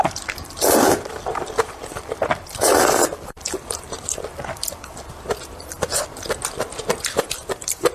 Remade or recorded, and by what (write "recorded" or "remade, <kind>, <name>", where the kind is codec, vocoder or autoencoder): remade, vocoder, BigVGAN v2